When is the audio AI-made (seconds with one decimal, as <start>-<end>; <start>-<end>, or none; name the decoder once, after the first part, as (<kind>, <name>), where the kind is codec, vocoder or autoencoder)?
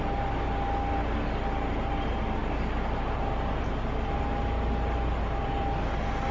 none